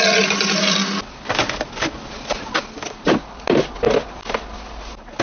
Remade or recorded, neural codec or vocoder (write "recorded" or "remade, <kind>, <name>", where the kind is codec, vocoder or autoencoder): recorded